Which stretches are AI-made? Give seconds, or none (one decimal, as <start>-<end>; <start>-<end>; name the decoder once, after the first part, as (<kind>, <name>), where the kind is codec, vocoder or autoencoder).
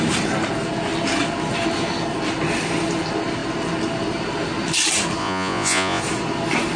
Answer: 5.2-6.0 (vocoder, Vocos)